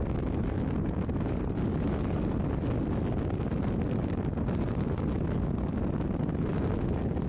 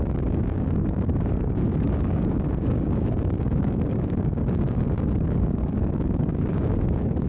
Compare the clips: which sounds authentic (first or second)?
first